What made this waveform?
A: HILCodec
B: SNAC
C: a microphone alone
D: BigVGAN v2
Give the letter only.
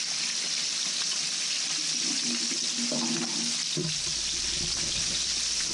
C